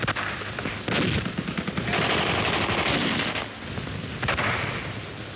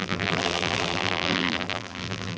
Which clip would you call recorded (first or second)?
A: first